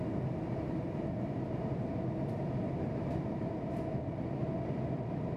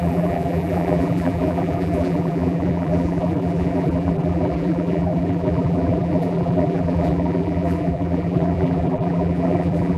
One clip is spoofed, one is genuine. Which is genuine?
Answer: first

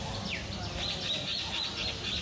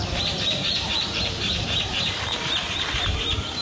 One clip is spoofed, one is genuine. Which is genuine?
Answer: first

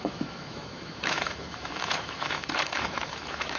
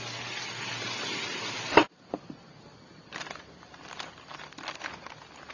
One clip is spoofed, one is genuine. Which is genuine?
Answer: second